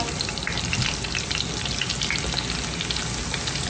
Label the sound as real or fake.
real